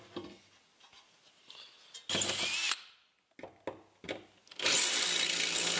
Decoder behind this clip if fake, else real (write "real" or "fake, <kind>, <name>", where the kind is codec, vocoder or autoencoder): real